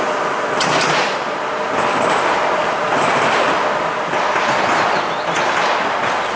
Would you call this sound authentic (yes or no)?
yes